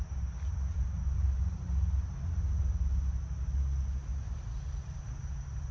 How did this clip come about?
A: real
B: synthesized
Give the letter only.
A